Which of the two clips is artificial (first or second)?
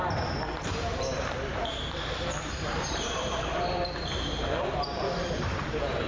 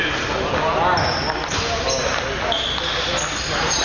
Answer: first